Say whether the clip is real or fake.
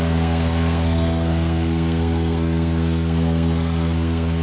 fake